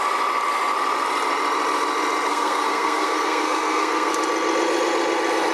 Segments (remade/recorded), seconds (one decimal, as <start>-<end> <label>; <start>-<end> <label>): 0.0-2.3 recorded; 2.3-4.1 remade; 4.1-5.5 recorded